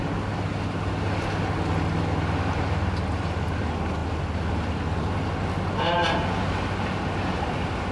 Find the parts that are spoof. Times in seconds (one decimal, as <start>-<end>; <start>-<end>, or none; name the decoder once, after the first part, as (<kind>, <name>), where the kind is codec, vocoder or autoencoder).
none